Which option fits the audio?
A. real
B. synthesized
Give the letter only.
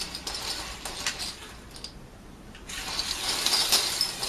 A